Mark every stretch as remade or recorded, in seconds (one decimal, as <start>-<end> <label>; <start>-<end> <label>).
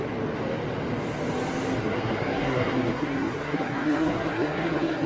0.0-1.8 recorded; 1.8-5.1 remade